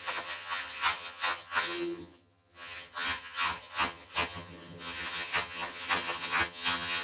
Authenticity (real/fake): fake